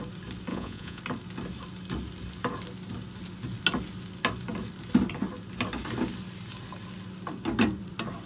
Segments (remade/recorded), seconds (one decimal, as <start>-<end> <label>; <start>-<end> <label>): 0.0-0.5 recorded; 0.5-1.0 remade; 1.0-8.3 recorded